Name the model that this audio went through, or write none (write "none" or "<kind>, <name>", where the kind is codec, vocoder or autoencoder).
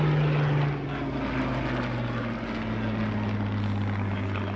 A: none